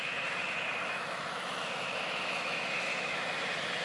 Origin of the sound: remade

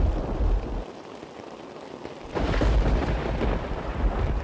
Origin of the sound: remade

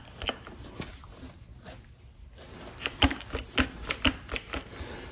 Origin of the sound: recorded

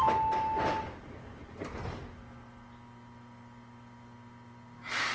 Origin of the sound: recorded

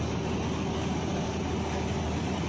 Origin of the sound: recorded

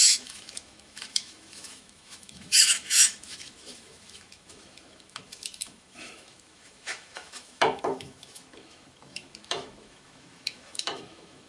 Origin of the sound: remade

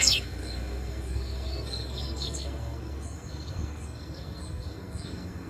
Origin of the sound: remade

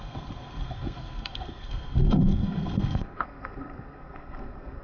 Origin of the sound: remade